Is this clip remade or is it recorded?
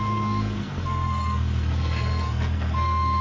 remade